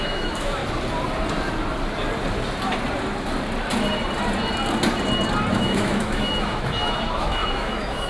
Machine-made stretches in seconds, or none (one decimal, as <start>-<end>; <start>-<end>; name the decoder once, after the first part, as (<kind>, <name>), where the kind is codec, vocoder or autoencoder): 0.0-0.6 (autoencoder, DAC-VAE); 5.5-8.1